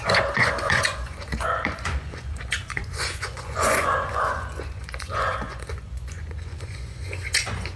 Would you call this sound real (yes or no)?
no